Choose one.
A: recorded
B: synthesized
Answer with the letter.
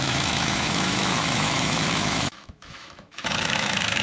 B